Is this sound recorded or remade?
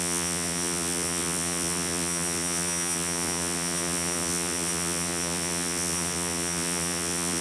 remade